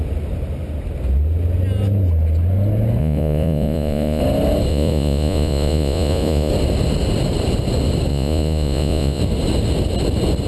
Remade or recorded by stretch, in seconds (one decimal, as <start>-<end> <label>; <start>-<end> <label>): 0.0-3.0 recorded; 3.0-4.2 remade; 4.2-4.7 recorded; 4.7-6.5 remade; 6.5-8.1 recorded; 8.1-9.2 remade; 9.2-10.5 recorded